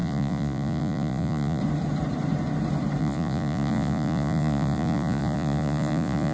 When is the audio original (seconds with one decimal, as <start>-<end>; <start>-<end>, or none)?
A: 1.6-3.0